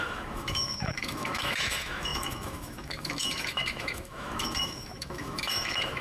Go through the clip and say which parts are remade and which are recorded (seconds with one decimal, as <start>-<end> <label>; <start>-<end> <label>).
0.0-6.0 remade